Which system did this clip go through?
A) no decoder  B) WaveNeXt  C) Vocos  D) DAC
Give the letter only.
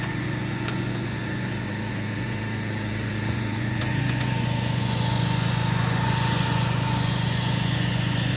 C